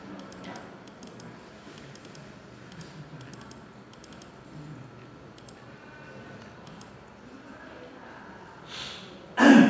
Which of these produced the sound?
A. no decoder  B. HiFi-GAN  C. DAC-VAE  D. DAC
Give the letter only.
A